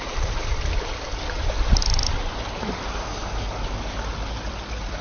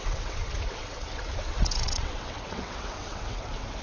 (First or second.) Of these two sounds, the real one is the first